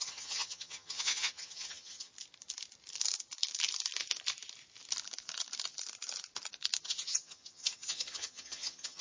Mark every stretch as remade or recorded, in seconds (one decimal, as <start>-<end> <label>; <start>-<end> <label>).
0.0-2.1 remade; 2.1-6.8 recorded; 6.8-9.0 remade